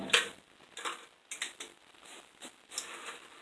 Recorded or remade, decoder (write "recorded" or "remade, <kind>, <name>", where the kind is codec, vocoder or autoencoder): recorded